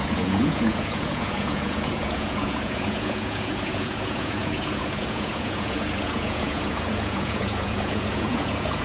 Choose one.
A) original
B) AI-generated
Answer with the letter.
B